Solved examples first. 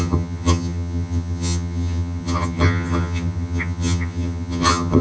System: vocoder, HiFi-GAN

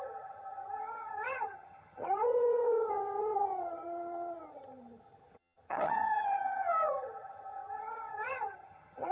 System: vocoder, HiFi-GAN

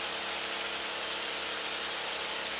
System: none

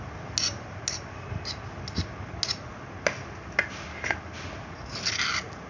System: none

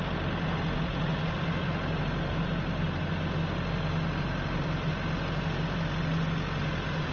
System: none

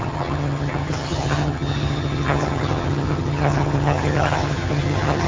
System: vocoder, HiFi-GAN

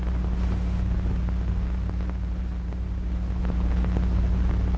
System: none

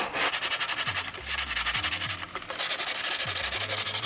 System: none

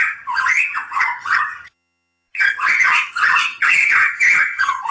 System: vocoder, HiFi-GAN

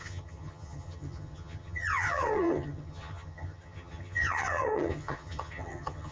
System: vocoder, HiFi-GAN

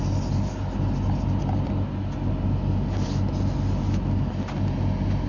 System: none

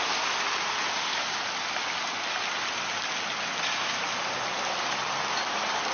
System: none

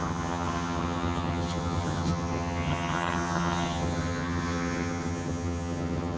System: vocoder, HiFi-GAN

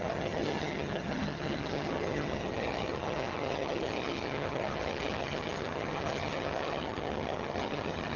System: vocoder, HiFi-GAN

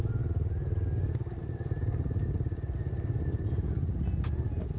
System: none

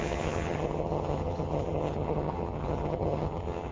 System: vocoder, HiFi-GAN